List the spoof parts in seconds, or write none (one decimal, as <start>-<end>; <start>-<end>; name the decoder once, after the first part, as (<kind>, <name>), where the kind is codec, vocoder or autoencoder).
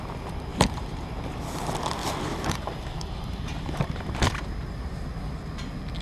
0.5-1.1 (vocoder, BigVGAN v2); 2.0-5.0